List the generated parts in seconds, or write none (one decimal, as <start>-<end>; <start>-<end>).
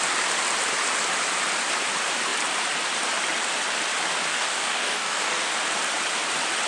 4.3-5.5